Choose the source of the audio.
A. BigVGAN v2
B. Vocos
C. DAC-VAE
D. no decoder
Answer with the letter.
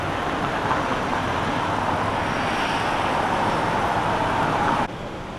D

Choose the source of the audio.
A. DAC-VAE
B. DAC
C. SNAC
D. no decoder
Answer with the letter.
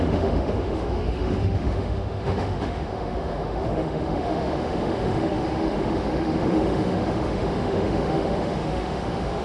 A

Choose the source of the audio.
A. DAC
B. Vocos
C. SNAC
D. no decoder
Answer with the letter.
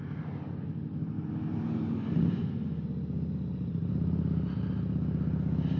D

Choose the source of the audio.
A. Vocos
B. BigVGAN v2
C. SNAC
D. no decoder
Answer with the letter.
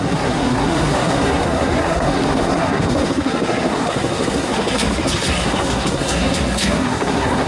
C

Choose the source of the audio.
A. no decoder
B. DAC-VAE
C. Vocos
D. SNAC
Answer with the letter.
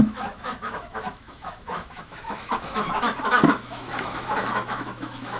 B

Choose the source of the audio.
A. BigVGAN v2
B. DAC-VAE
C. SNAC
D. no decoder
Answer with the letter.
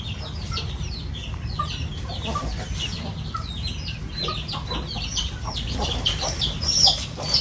A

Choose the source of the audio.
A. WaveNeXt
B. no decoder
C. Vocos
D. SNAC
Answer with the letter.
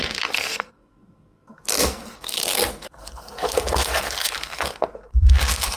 D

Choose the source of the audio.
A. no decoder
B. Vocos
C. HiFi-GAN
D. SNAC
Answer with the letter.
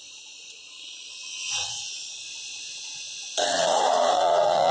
B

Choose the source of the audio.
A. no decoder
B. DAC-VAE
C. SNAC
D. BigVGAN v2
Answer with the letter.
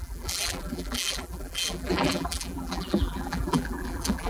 D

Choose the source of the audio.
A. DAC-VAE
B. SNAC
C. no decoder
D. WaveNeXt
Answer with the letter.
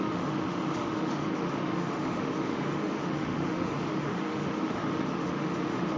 A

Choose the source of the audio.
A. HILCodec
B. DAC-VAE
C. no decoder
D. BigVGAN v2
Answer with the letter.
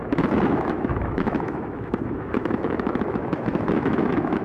B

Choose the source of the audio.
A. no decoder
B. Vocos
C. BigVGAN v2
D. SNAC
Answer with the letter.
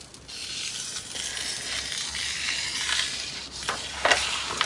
A